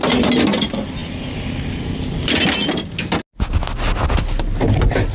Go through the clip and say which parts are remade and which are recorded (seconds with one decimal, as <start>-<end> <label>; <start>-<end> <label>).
0.0-5.1 recorded